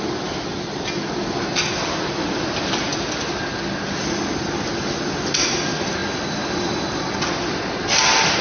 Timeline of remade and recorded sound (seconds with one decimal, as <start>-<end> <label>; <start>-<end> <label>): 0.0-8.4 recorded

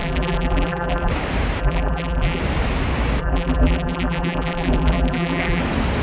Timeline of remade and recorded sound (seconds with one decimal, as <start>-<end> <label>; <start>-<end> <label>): 0.0-1.1 remade; 1.1-1.6 recorded; 1.6-2.4 remade; 2.4-3.2 recorded; 3.2-5.6 remade; 5.6-6.0 recorded

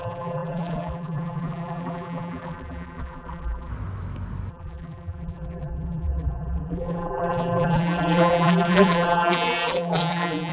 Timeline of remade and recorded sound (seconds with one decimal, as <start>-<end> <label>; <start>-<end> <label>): 0.0-3.7 remade; 3.7-4.5 recorded; 4.5-10.5 remade

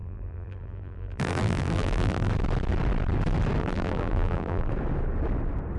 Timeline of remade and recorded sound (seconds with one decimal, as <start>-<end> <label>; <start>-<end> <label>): 0.0-2.3 remade; 2.3-3.6 recorded; 3.6-4.7 remade; 4.7-5.8 recorded

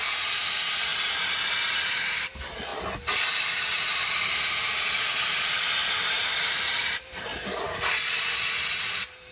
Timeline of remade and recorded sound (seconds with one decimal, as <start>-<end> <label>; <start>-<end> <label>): 0.0-0.9 remade; 0.9-1.5 recorded; 1.5-2.7 remade; 2.7-3.3 recorded; 3.3-7.3 remade; 7.3-8.7 recorded; 8.7-9.3 remade